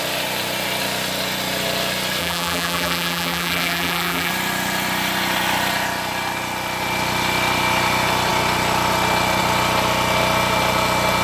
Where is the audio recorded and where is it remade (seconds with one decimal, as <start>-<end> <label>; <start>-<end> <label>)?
0.0-2.2 recorded; 2.2-4.3 remade; 4.3-11.2 recorded